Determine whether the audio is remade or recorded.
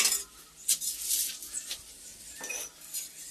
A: recorded